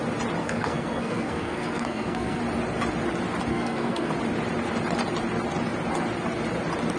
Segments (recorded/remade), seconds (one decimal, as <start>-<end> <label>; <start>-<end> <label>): 0.0-0.4 recorded; 0.4-2.4 remade; 2.4-3.5 recorded; 3.5-4.1 remade; 4.1-7.0 recorded